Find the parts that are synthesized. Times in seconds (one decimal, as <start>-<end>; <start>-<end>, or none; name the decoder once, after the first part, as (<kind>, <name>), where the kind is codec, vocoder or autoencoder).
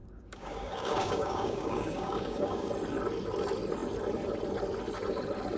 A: 0.0-2.7 (codec, DAC)